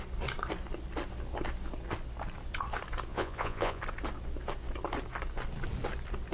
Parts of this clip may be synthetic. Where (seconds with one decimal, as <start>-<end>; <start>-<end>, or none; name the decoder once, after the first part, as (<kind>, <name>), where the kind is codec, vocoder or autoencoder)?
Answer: 3.1-3.8 (vocoder, Vocos)